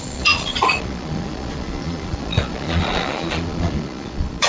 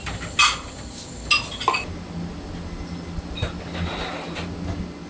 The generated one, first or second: first